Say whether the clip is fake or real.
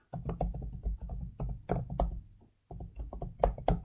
real